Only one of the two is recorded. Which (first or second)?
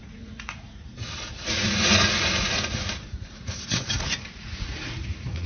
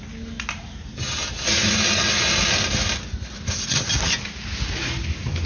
second